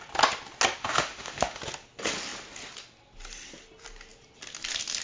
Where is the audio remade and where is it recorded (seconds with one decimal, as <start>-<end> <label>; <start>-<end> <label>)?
0.0-0.8 recorded; 0.8-1.6 remade; 1.6-5.0 recorded